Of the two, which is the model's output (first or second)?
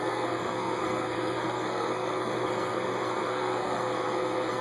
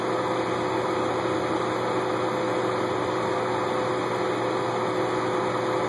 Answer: first